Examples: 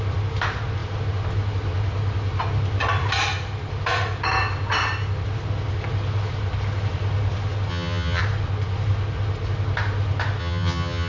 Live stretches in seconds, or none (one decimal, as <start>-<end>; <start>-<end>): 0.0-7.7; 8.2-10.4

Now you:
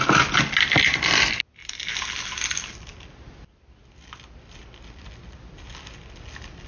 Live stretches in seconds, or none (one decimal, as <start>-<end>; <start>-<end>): 0.0-6.7

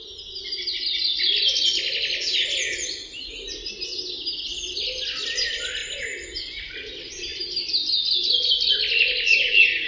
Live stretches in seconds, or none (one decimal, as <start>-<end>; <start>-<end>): 0.0-9.9